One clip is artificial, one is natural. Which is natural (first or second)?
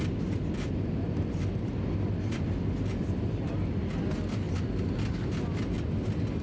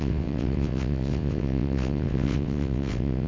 first